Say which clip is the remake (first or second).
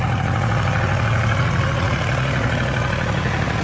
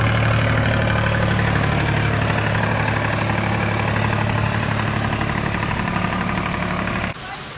first